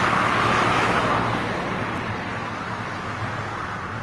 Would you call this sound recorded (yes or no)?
yes